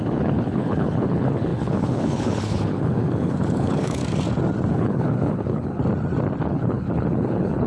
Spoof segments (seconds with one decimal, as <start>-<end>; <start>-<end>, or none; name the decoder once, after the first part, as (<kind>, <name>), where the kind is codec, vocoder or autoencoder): 0.0-4.0 (codec, HILCodec); 4.7-5.8; 6.4-7.7